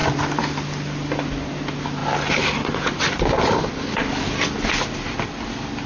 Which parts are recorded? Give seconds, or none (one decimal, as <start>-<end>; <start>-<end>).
0.0-5.9